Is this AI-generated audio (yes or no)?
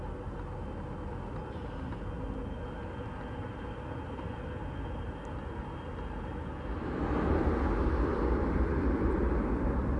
no